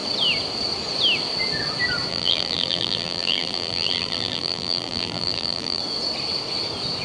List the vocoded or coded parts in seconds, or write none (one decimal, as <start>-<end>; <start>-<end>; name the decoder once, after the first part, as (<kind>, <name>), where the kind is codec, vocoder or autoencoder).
2.1-5.8 (vocoder, BigVGAN v2)

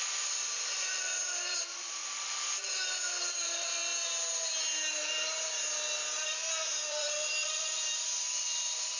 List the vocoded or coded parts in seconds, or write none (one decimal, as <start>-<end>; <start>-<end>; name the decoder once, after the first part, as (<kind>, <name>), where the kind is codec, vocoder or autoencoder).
0.0-2.0 (vocoder, BigVGAN v2); 3.2-3.8; 6.7-9.0

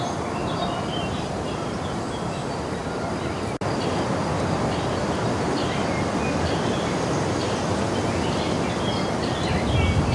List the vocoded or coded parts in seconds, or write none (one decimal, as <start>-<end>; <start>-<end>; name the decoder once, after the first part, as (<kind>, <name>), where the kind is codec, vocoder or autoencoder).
0.4-2.0 (vocoder, BigVGAN v2)